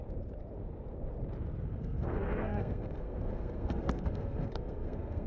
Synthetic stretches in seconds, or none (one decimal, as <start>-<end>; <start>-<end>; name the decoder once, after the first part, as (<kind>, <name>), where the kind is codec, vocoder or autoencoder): 1.6-5.3 (codec, SNAC)